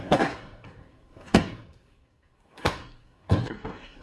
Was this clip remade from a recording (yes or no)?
yes